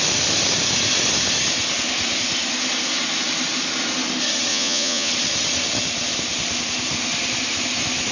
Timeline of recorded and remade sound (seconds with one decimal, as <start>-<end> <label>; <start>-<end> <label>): 0.0-4.5 recorded; 4.5-5.1 remade; 5.1-8.1 recorded